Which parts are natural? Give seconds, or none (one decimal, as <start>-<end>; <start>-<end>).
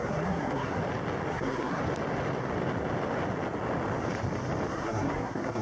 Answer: 0.8-1.3; 1.8-4.7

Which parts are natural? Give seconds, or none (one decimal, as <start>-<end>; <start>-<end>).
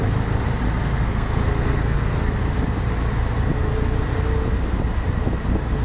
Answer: 0.0-0.8; 2.4-5.8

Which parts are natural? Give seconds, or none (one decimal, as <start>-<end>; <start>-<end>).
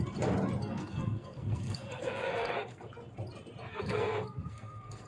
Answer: 0.0-0.6; 2.9-3.7